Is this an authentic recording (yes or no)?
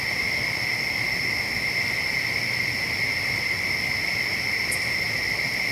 yes